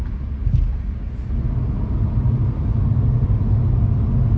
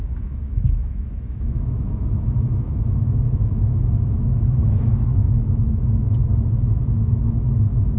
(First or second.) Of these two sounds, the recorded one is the first